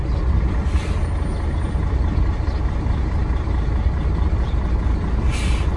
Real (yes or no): yes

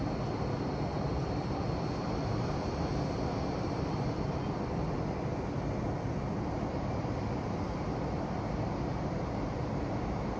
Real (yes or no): yes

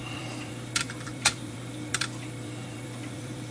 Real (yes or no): no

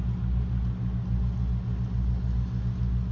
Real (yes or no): yes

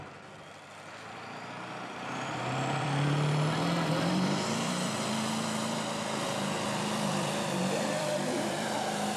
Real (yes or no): no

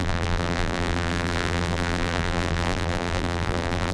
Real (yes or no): no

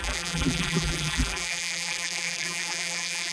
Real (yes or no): no